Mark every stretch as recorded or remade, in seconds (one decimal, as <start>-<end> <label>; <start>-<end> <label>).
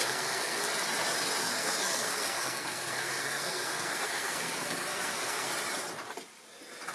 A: 0.0-0.6 remade; 0.6-1.4 recorded; 1.4-5.5 remade; 5.5-6.9 recorded